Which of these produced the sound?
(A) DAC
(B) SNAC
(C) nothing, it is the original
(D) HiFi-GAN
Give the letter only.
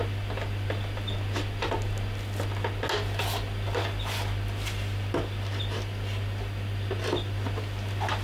C